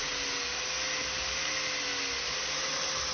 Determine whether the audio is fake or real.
real